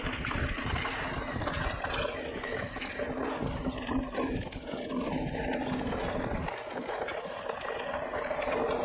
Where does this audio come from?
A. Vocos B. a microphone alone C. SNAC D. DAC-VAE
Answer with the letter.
B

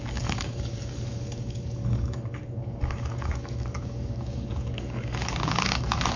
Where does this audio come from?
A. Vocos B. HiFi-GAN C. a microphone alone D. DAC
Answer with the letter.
D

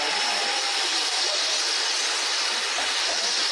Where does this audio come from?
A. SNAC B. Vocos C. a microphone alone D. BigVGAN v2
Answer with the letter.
C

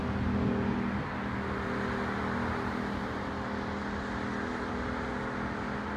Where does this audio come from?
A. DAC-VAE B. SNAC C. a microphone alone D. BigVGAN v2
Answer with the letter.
C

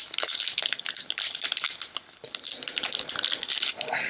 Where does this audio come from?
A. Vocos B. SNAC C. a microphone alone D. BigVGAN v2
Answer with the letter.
C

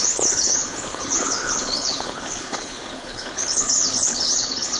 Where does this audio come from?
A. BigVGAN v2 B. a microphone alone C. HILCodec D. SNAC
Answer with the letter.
C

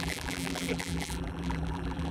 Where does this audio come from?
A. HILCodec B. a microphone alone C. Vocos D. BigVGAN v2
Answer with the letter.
D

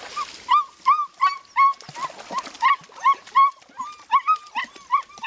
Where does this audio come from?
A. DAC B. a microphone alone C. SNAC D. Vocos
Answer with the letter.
B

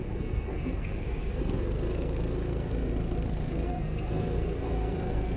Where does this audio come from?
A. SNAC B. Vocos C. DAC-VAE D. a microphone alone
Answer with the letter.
A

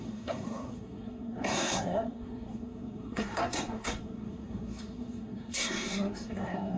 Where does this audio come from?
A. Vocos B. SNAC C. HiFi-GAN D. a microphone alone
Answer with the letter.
B